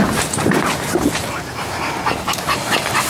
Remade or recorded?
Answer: recorded